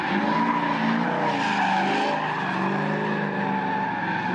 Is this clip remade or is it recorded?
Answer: recorded